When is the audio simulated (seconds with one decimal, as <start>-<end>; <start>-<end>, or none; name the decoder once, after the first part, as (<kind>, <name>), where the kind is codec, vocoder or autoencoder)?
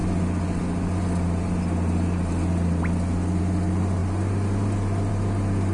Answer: none